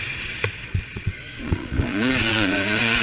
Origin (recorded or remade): remade